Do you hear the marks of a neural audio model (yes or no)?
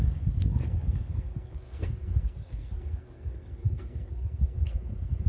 yes